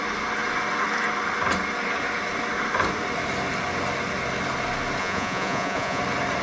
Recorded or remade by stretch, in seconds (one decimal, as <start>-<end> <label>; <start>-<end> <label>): 0.0-5.0 recorded; 5.0-6.0 remade; 6.0-6.4 recorded

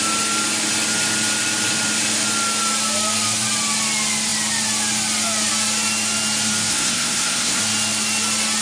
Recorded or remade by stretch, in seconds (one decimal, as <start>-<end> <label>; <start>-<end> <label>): 0.0-6.7 recorded; 6.7-7.6 remade; 7.6-8.6 recorded

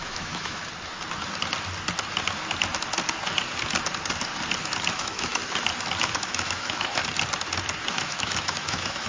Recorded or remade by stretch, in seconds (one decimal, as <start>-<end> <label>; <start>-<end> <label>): 0.0-0.6 remade; 0.6-4.9 recorded; 4.9-5.4 remade; 5.4-6.0 recorded; 6.0-7.0 remade; 7.0-7.9 recorded; 7.9-9.1 remade

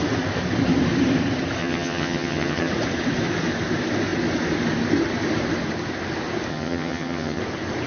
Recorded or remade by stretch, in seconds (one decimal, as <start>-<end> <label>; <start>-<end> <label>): 0.0-1.6 recorded; 1.6-2.7 remade; 2.7-6.5 recorded; 6.5-7.4 remade; 7.4-7.9 recorded

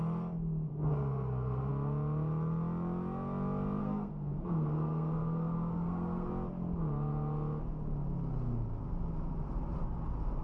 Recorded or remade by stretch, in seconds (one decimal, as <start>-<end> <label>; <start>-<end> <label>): 0.0-0.7 recorded; 0.7-1.7 remade; 1.7-3.8 recorded; 3.8-6.3 remade; 6.3-10.4 recorded

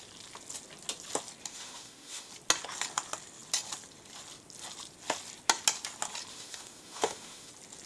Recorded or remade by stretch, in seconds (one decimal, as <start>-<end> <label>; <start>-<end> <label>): 0.0-1.5 recorded; 1.5-2.3 remade; 2.3-6.3 recorded; 6.3-7.5 remade; 7.5-7.9 recorded

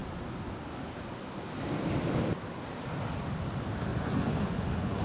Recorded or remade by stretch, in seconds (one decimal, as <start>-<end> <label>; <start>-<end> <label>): 0.0-3.9 recorded; 3.9-5.0 remade

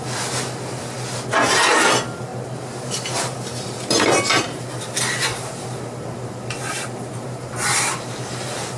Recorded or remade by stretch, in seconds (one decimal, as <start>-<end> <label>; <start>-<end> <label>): 0.0-4.3 recorded; 4.3-8.4 remade; 8.4-8.8 recorded